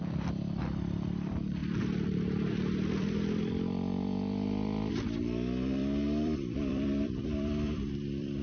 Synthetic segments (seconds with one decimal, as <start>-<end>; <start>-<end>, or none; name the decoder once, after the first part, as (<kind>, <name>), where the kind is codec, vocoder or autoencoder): 0.0-8.4 (vocoder, BigVGAN v2)